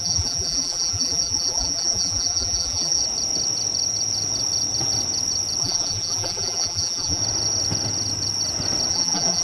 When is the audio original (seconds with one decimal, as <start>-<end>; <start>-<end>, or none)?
3.0-5.6; 7.2-8.9